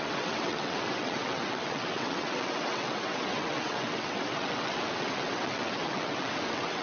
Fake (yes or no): yes